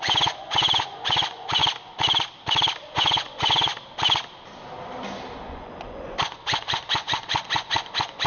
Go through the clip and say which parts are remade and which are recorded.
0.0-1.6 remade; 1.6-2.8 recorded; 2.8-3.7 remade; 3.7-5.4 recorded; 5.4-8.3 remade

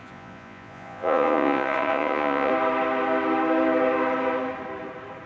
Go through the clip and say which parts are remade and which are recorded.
0.0-2.5 remade; 2.5-5.3 recorded

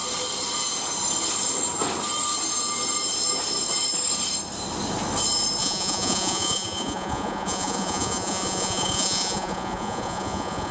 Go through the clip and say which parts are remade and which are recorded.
0.0-5.6 recorded; 5.6-10.7 remade